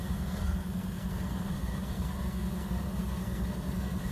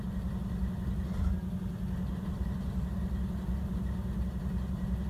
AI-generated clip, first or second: first